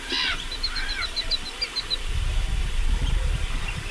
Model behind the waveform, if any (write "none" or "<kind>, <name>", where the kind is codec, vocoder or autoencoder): none